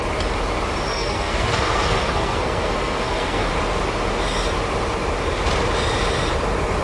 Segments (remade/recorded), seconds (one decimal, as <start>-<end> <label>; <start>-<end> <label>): 0.0-0.9 recorded; 0.9-3.5 remade; 3.5-6.8 recorded